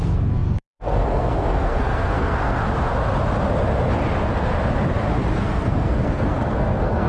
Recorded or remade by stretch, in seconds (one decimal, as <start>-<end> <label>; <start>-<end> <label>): 0.0-2.6 remade; 2.6-5.3 recorded; 5.3-7.1 remade